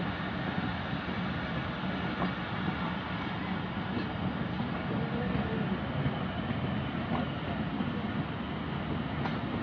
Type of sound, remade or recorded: recorded